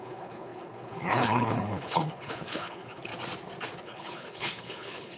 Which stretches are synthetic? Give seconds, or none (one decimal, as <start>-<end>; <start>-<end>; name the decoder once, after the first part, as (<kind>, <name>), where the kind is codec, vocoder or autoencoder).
0.0-3.1 (codec, HILCodec); 3.8-5.2